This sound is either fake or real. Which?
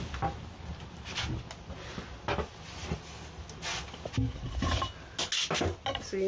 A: real